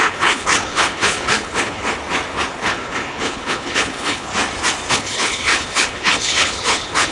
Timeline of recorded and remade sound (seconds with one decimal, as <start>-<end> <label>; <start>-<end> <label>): 0.0-1.8 remade; 1.8-2.6 recorded; 2.6-4.3 remade; 4.3-4.9 recorded; 4.9-7.1 remade